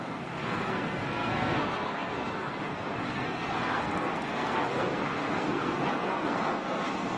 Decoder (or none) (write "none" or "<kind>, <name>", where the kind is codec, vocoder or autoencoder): codec, SNAC